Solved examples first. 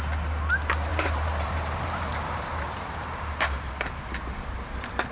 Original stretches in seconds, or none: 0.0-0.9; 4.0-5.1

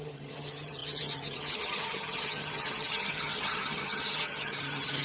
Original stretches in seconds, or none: none

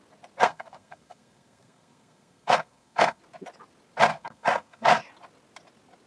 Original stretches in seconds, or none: 0.0-0.4; 3.2-4.1; 5.0-6.1

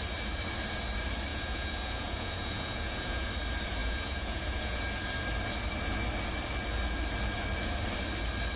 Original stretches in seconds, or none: 0.0-1.3; 3.3-3.8; 4.8-8.6

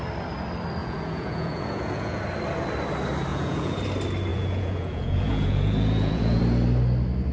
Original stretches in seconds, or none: 0.0-0.8; 2.2-3.3; 3.8-4.3; 6.4-7.3